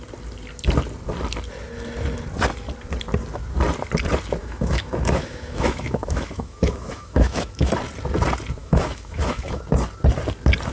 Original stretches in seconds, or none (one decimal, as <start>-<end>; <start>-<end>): 0.0-4.4; 7.7-8.6; 9.6-10.7